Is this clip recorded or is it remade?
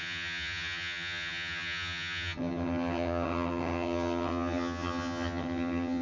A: remade